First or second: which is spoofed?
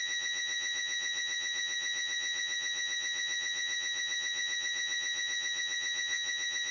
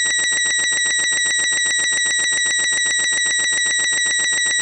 first